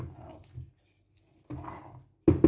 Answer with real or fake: real